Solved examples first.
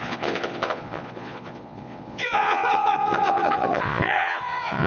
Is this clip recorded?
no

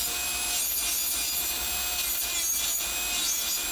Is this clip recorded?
yes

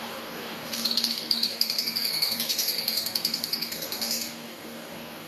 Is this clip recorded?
no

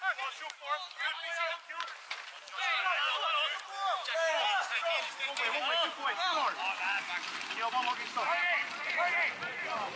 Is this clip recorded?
yes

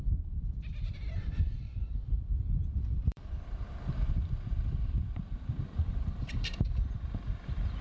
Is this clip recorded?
no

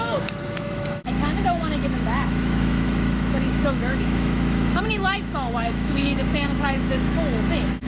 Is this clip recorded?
no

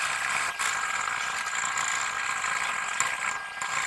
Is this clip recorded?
yes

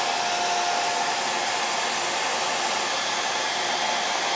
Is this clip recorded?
yes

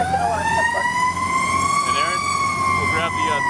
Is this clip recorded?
yes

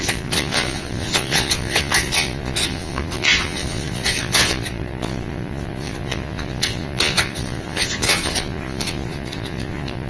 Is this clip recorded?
no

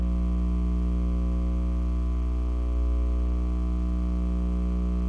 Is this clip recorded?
yes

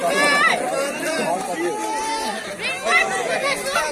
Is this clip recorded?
yes